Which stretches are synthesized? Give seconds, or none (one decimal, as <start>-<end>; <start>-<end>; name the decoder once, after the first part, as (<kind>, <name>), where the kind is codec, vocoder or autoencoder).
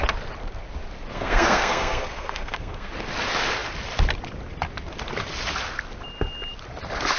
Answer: 1.1-2.9 (codec, SNAC)